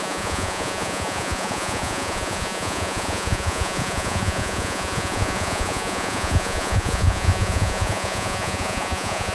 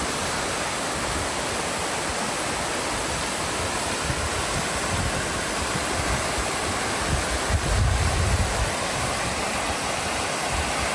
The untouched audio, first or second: second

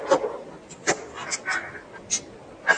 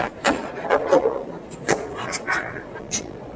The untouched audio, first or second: first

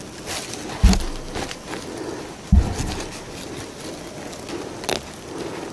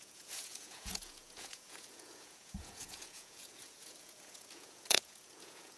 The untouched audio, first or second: first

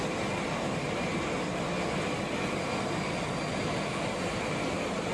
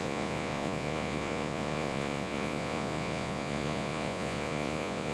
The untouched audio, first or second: first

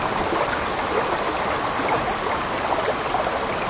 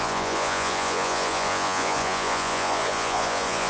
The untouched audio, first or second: first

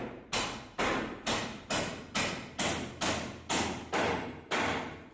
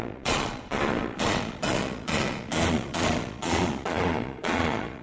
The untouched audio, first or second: first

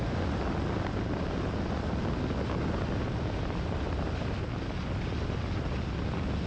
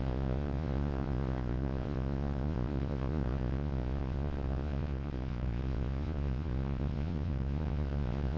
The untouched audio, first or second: first